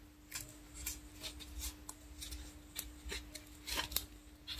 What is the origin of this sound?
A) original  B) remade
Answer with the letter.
A